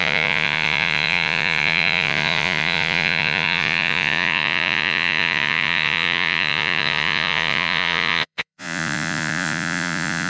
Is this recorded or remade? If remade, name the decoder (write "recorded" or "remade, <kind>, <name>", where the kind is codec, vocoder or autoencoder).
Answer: remade, vocoder, Vocos